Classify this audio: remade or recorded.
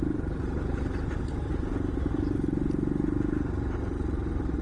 recorded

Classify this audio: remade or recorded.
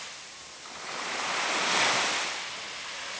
recorded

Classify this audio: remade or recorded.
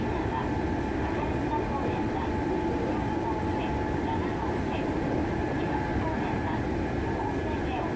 recorded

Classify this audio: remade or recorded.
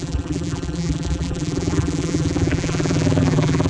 remade